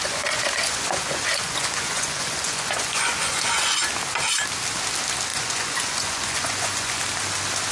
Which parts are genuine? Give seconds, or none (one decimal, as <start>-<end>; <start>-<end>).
3.9-5.3; 7.0-7.7